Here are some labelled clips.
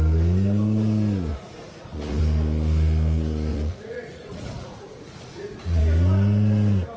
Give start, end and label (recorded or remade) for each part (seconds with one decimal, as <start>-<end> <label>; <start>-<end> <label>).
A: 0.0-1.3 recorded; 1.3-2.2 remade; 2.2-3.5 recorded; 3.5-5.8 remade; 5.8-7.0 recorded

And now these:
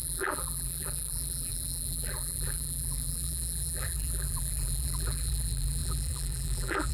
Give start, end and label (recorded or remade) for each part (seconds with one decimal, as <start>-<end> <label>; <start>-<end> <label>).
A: 0.0-6.9 remade

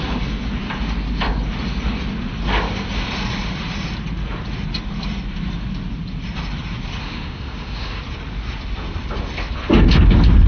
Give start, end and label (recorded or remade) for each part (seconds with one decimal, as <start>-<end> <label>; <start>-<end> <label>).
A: 0.0-7.0 recorded; 7.0-8.0 remade; 8.0-10.5 recorded

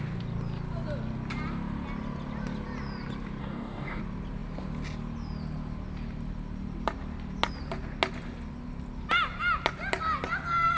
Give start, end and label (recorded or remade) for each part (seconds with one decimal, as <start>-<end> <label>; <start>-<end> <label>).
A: 0.0-3.4 recorded; 3.4-4.0 remade; 4.0-10.8 recorded

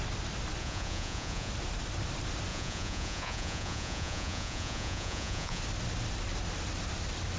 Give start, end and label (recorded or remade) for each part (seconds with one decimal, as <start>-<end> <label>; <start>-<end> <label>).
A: 0.0-0.6 recorded; 0.6-1.5 remade; 1.5-2.5 recorded; 2.5-5.6 remade; 5.6-7.4 recorded

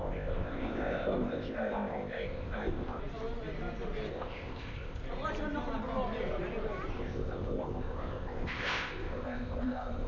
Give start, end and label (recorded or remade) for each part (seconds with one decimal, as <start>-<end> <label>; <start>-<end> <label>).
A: 0.0-3.0 remade; 3.0-4.1 recorded; 4.1-5.0 remade; 5.0-6.9 recorded; 6.9-10.1 remade